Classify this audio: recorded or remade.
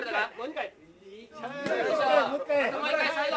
recorded